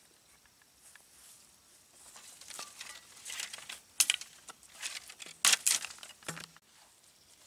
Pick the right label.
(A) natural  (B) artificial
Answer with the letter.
A